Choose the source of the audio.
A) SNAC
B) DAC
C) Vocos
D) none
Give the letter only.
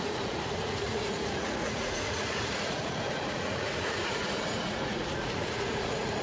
C